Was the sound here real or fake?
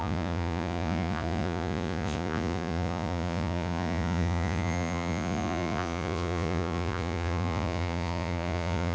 fake